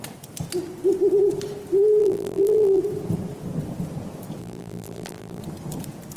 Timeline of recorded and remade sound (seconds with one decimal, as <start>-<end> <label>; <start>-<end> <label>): 0.0-2.0 recorded; 2.0-2.8 remade; 2.8-4.4 recorded; 4.4-5.4 remade; 5.4-6.2 recorded